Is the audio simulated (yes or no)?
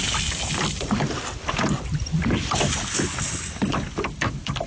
no